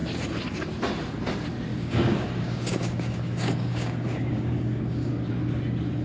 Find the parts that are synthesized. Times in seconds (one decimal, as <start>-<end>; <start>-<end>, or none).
1.7-5.3